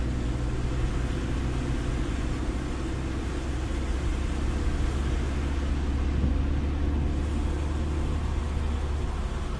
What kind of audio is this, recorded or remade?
recorded